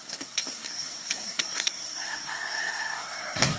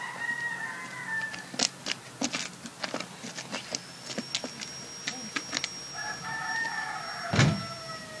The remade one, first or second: first